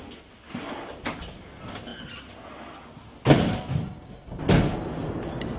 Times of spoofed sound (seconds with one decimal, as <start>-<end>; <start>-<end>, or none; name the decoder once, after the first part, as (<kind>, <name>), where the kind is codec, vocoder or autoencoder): none

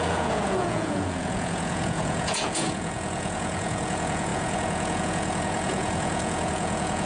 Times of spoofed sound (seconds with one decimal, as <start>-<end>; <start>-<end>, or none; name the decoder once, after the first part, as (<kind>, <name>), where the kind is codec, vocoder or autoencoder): 0.0-7.1 (vocoder, Vocos)

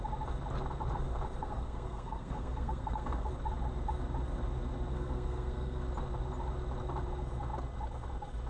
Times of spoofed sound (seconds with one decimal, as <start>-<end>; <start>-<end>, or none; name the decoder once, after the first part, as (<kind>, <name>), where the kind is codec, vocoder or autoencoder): 1.4-3.3 (codec, SNAC); 4.9-5.8

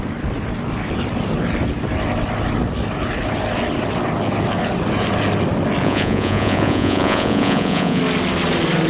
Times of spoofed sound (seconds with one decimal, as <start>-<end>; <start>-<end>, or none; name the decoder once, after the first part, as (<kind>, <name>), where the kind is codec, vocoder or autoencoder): 5.8-8.0 (vocoder, Vocos)